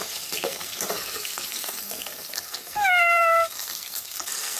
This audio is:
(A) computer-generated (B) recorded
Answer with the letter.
A